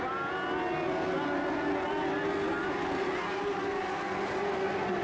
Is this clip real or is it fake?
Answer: real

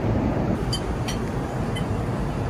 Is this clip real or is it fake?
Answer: real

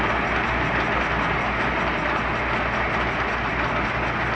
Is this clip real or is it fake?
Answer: real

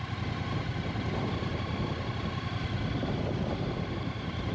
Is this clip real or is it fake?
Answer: real